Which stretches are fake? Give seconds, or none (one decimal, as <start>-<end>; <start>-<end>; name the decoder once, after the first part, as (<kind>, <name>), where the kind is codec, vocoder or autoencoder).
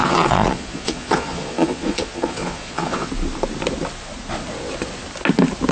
0.0-3.1 (vocoder, Vocos)